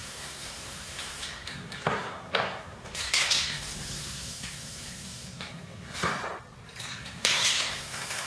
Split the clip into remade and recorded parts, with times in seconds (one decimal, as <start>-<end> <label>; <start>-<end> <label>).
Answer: 0.0-6.1 remade; 6.1-6.8 recorded; 6.8-8.3 remade